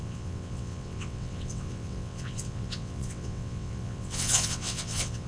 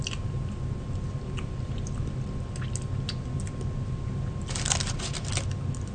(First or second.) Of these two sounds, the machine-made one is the first